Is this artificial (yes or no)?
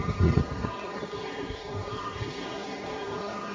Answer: yes